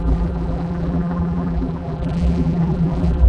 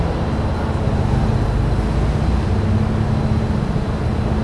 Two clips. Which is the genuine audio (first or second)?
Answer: second